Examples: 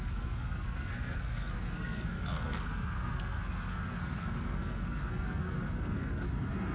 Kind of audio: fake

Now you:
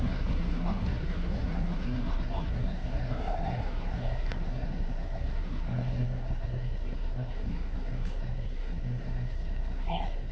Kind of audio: fake